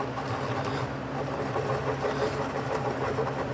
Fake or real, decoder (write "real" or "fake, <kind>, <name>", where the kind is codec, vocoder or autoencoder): real